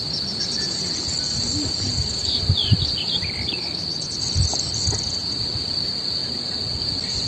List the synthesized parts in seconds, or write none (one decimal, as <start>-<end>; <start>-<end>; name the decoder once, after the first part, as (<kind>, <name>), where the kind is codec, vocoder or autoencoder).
none